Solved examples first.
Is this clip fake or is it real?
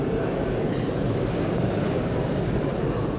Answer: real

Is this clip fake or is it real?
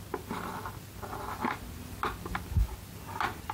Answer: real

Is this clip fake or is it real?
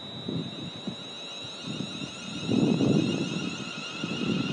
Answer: real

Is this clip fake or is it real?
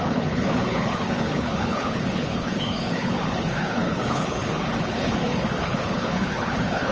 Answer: fake